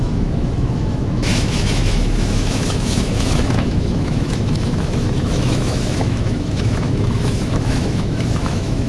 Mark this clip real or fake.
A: fake